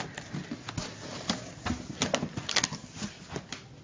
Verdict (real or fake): real